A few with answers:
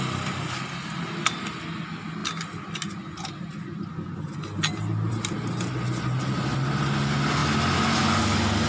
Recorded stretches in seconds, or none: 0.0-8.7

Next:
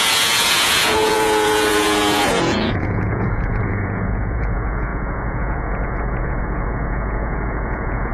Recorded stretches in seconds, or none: none